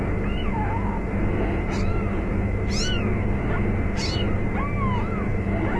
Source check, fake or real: real